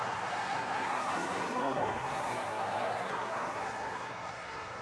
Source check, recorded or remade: remade